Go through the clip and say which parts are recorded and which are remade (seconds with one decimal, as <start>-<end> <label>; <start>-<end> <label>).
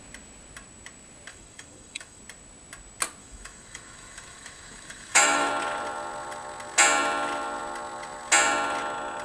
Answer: 0.0-1.3 recorded; 1.3-2.2 remade; 2.2-3.2 recorded; 3.2-5.5 remade; 5.5-9.2 recorded